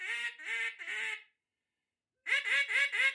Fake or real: real